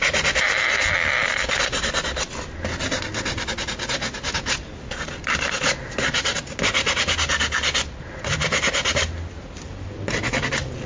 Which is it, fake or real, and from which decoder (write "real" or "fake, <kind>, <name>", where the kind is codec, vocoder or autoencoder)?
real